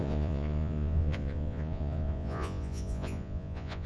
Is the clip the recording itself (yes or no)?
no